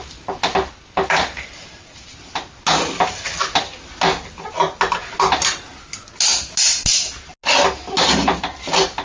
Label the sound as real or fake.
real